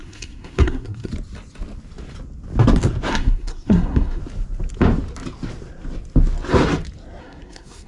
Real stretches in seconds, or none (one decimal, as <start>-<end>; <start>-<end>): 1.1-3.1; 4.2-7.2